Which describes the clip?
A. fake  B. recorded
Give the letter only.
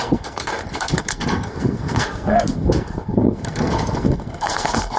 A